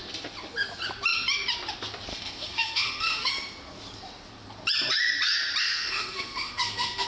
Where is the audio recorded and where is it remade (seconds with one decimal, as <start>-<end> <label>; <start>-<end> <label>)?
0.0-2.1 recorded; 2.1-3.3 remade; 3.3-5.6 recorded; 5.6-7.1 remade